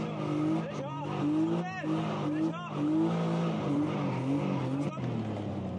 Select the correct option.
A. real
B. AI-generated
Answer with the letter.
A